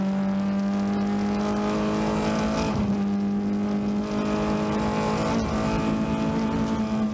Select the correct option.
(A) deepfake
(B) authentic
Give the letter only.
B